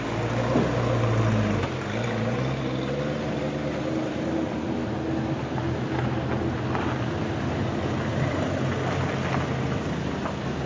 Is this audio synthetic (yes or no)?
no